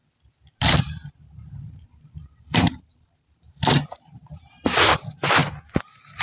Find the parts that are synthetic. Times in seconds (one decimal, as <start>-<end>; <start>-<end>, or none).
0.7-5.4